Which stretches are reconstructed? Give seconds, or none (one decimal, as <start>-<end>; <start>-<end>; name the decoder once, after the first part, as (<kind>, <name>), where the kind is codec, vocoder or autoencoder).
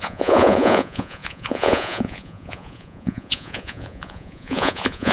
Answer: 0.0-5.1 (vocoder, Vocos)